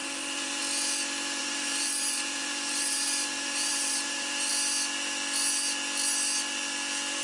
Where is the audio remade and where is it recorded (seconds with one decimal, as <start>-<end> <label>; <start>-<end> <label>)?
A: 0.0-0.6 remade; 0.6-1.4 recorded; 1.4-4.5 remade; 4.5-7.2 recorded